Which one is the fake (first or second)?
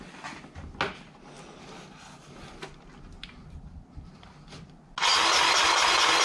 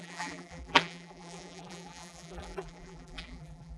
second